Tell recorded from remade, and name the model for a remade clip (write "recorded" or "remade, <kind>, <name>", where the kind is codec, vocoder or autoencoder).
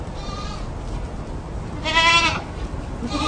recorded